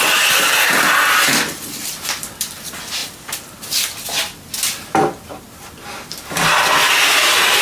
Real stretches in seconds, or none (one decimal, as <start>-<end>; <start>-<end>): 0.0-7.6